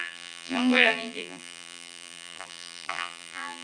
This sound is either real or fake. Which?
fake